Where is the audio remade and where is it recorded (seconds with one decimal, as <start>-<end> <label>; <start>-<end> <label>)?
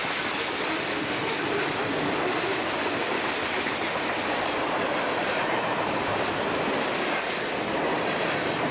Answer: 0.0-3.0 recorded; 3.0-4.1 remade; 4.1-8.7 recorded